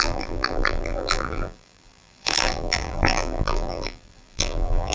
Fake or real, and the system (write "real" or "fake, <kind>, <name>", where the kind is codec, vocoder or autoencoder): fake, vocoder, BigVGAN v2